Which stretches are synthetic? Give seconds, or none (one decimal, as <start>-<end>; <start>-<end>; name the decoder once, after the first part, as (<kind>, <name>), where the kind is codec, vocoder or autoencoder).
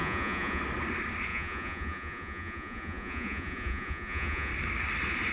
0.0-0.6 (vocoder, Vocos); 1.3-4.5